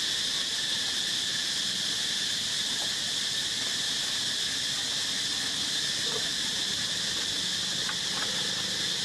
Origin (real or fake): real